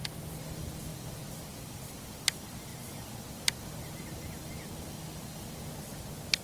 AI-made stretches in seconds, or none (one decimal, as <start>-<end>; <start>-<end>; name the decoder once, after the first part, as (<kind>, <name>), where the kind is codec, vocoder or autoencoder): none

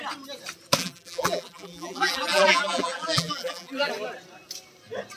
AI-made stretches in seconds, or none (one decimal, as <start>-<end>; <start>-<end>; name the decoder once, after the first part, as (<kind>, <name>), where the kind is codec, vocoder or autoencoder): 0.8-3.9 (vocoder, BigVGAN v2)

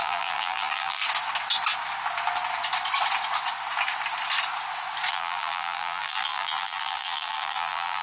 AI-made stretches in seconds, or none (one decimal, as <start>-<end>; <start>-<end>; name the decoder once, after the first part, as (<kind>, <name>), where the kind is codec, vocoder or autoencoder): 0.0-1.0 (vocoder, BigVGAN v2); 5.1-8.0

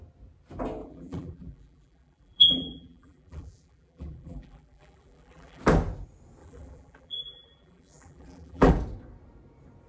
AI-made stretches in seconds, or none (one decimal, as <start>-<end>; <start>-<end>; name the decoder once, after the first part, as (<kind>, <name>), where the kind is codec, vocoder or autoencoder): 0.8-5.6 (vocoder, BigVGAN v2); 6.4-8.7

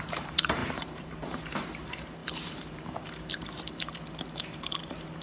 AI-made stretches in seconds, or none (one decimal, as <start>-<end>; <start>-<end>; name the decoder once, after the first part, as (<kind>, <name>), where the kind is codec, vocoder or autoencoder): 0.0-5.2 (vocoder, BigVGAN v2)

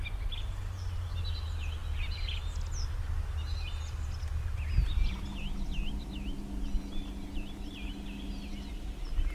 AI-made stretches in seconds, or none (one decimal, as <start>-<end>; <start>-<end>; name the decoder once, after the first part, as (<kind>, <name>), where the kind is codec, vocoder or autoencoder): none

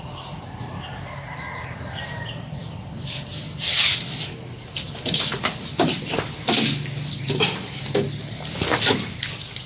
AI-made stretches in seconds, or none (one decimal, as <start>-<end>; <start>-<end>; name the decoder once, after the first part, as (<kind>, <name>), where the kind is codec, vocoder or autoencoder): 0.0-9.7 (vocoder, BigVGAN v2)